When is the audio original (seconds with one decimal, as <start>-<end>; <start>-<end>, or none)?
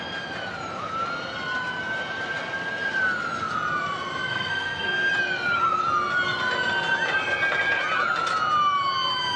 0.0-4.3; 5.1-9.4